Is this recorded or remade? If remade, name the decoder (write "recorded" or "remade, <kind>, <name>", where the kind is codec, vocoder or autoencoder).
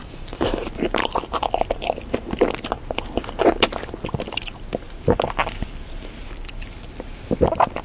recorded